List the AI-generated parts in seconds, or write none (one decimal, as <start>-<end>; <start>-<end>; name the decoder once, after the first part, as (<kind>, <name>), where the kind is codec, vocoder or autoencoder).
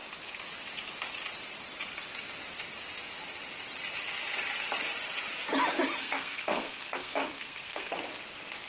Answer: 6.0-8.0 (codec, SNAC)